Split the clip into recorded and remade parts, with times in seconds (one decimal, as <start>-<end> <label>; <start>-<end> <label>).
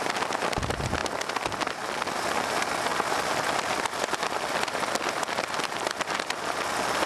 0.0-7.1 recorded